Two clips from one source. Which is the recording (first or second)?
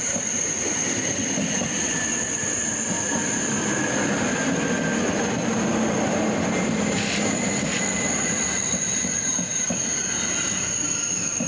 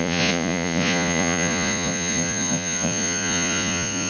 first